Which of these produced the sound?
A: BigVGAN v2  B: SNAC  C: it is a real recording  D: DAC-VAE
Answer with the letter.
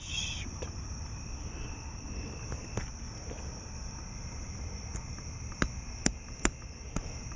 C